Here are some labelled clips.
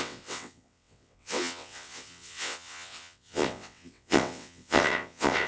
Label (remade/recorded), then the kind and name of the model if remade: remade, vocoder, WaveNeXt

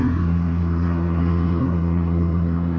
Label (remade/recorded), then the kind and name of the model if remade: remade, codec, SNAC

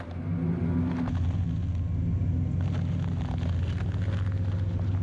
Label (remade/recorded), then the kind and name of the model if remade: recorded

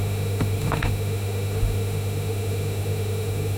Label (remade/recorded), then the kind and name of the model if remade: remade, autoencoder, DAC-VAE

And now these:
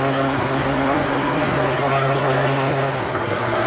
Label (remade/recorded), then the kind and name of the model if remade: remade, codec, SNAC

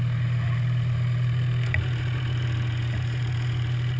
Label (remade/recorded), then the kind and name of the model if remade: recorded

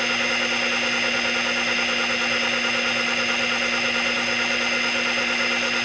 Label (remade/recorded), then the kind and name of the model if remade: recorded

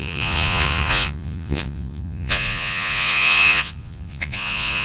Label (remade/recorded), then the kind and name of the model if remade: remade, vocoder, Vocos